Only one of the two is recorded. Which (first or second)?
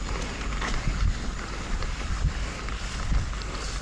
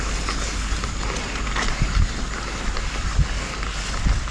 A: second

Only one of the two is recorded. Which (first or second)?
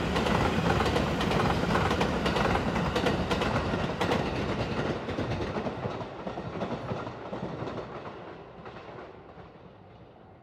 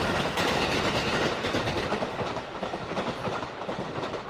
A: first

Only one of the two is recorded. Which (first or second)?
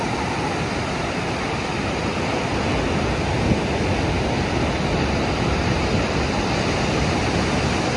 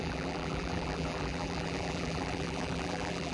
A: first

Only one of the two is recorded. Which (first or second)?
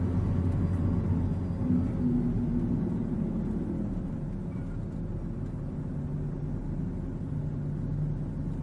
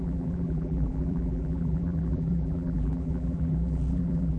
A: first